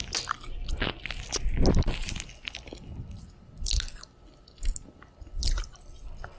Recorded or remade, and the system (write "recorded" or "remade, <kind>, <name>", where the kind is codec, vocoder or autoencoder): recorded